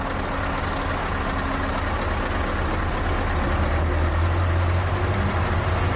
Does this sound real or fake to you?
real